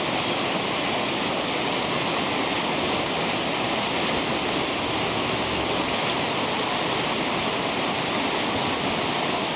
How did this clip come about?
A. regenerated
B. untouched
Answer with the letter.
B